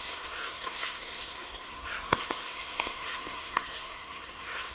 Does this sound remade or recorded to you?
remade